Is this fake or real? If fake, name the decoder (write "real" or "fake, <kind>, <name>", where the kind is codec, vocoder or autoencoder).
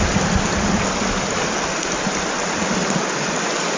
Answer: real